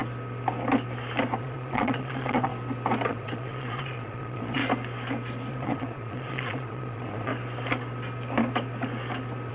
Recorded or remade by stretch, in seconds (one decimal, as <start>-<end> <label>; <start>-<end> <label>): 0.0-1.4 recorded; 1.4-2.5 remade; 2.5-3.1 recorded; 3.1-4.6 remade; 4.6-5.5 recorded; 5.5-7.3 remade; 7.3-9.5 recorded